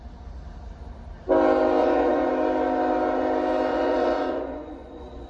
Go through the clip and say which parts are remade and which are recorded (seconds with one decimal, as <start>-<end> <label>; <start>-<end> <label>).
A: 0.0-1.8 recorded; 1.8-2.3 remade; 2.3-3.7 recorded; 3.7-5.3 remade